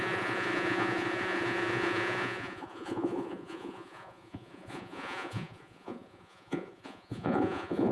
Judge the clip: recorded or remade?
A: remade